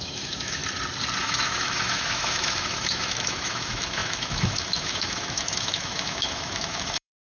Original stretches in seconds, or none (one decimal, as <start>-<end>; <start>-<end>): 0.6-1.2